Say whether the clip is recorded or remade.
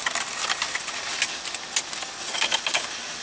recorded